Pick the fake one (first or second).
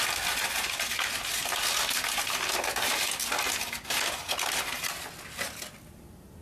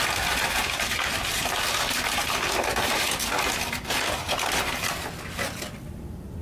second